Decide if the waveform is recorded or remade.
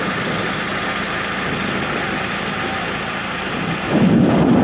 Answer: recorded